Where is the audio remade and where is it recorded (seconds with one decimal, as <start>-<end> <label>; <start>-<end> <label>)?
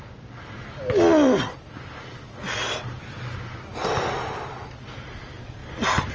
0.0-6.1 recorded